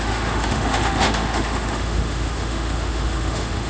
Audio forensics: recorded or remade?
remade